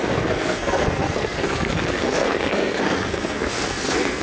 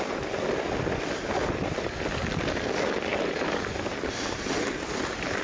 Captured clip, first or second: second